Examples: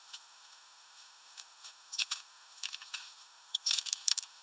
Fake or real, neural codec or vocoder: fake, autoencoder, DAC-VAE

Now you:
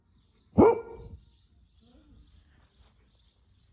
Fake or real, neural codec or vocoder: real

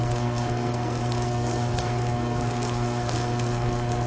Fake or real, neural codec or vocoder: fake, codec, SNAC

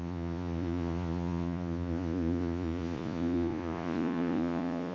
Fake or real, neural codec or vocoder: fake, vocoder, Vocos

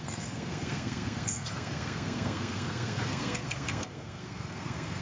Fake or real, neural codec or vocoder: fake, codec, SNAC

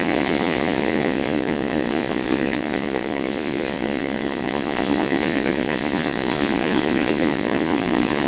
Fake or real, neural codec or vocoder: fake, vocoder, Vocos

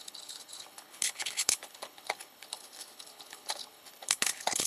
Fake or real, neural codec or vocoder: fake, codec, HILCodec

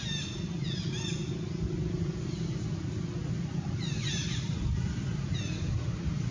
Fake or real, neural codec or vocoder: real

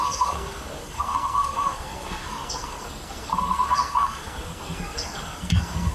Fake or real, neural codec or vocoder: fake, codec, SNAC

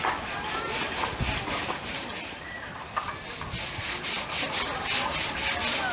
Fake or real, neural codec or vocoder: real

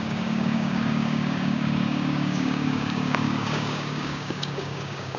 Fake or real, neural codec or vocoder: fake, codec, DAC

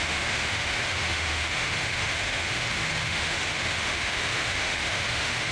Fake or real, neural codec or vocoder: fake, autoencoder, DAC-VAE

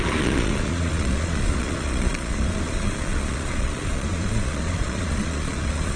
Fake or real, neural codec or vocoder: fake, vocoder, Vocos